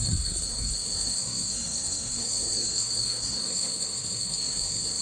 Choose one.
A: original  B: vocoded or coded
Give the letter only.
B